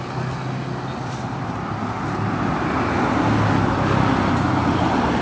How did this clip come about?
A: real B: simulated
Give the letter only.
A